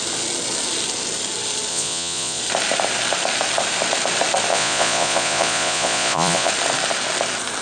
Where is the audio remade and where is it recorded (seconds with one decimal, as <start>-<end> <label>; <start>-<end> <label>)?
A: 0.0-1.7 recorded; 1.7-2.4 remade; 2.4-4.5 recorded; 4.5-6.5 remade; 6.5-7.6 recorded